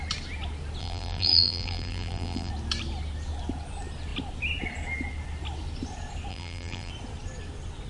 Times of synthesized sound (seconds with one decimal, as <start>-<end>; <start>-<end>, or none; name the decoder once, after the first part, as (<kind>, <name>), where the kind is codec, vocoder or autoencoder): 0.8-2.5 (vocoder, BigVGAN v2); 6.3-6.9